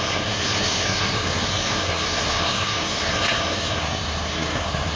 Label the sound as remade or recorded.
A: remade